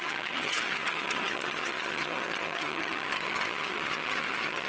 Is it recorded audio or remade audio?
remade